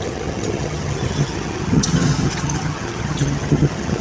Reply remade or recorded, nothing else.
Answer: remade